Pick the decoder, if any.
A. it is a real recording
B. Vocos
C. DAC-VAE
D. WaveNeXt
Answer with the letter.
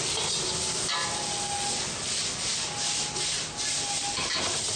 A